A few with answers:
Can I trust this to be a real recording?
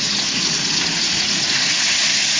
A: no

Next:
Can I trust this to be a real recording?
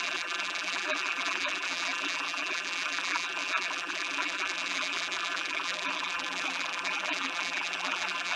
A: no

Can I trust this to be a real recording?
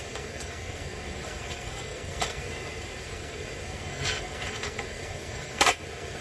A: no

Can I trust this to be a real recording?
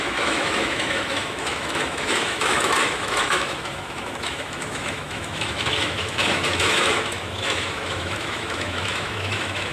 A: no